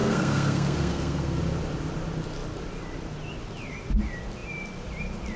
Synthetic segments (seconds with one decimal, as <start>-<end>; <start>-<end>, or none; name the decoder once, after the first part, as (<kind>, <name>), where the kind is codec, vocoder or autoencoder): 0.0-1.4 (codec, SNAC)